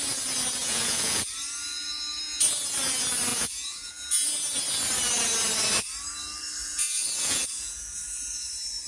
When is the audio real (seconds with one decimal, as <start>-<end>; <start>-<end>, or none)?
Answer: 0.0-0.6; 1.3-3.3; 3.9-6.6; 8.0-8.9